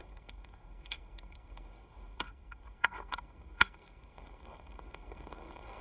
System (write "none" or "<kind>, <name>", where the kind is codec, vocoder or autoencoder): codec, SNAC